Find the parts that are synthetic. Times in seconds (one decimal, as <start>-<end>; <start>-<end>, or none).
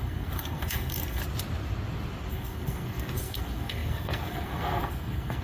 0.0-1.2; 2.3-5.4